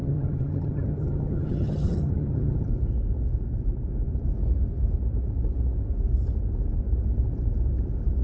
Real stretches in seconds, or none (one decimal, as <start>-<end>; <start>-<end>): 2.7-8.2